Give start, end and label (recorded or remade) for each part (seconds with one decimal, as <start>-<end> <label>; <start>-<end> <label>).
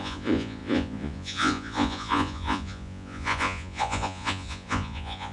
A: 0.0-5.3 remade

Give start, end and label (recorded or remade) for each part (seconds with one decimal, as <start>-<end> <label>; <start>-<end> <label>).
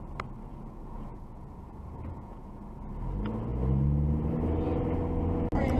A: 0.0-0.5 recorded; 0.5-2.6 remade; 2.6-5.8 recorded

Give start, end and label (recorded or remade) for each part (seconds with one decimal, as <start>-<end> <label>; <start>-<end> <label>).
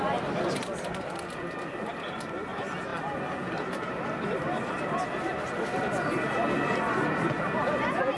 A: 0.0-8.2 recorded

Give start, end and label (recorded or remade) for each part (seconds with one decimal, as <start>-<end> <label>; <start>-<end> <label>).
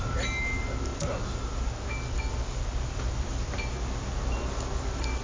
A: 0.0-5.2 recorded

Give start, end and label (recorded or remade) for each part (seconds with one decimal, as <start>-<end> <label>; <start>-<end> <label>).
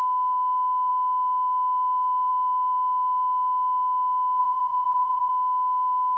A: 0.0-4.4 recorded; 4.4-5.3 remade; 5.3-6.2 recorded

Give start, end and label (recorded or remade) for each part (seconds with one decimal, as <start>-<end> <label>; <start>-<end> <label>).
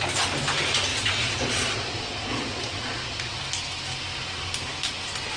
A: 0.0-0.9 recorded; 0.9-3.4 remade; 3.4-5.4 recorded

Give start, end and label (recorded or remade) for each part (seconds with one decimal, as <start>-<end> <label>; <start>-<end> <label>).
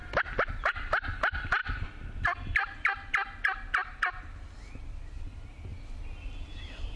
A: 0.0-7.0 recorded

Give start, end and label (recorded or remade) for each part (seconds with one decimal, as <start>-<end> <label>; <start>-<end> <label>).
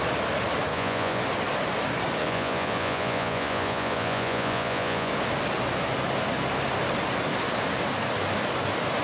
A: 0.0-0.7 recorded; 0.7-1.2 remade; 1.2-2.2 recorded; 2.2-5.1 remade; 5.1-9.0 recorded